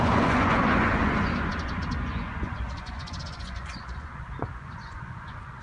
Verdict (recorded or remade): remade